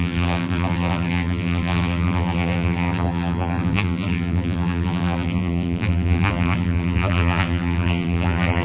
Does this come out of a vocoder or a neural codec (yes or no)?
yes